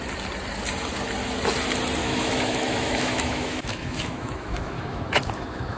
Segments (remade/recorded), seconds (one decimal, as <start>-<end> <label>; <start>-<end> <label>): 0.0-2.0 recorded; 2.0-5.8 remade